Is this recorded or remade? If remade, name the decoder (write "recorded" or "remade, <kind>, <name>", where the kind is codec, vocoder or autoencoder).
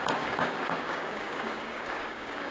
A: remade, codec, DAC